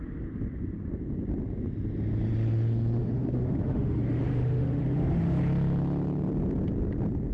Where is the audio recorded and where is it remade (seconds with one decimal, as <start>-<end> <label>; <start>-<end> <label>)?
0.0-3.0 recorded; 3.0-5.4 remade; 5.4-7.3 recorded